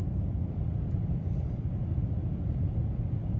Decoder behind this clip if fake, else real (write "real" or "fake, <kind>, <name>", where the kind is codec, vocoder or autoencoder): real